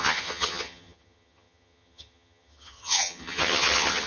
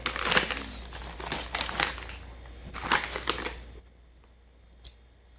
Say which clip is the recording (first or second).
second